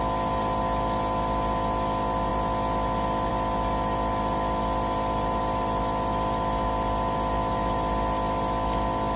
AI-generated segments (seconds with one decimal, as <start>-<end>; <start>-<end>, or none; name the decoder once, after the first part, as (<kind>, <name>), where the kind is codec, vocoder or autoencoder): none